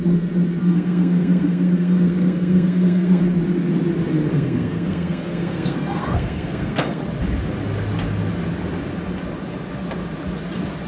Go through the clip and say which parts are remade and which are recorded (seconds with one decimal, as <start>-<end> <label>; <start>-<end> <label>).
0.0-0.6 recorded; 0.6-3.2 remade; 3.2-4.3 recorded; 4.3-7.0 remade; 7.0-10.9 recorded